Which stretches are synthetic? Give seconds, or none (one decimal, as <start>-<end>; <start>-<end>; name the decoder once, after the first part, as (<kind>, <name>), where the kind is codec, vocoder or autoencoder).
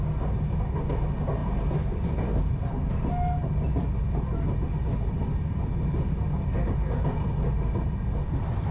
none